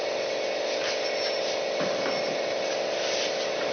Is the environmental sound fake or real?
real